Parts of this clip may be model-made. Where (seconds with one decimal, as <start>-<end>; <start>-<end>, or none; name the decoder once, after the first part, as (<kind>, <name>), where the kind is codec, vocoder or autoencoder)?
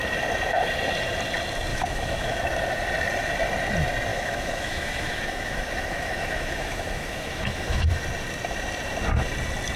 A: 1.7-2.4 (autoencoder, DAC-VAE); 4.1-7.9